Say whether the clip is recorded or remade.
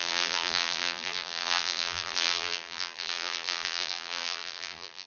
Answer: remade